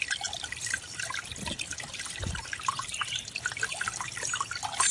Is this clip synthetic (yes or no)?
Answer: no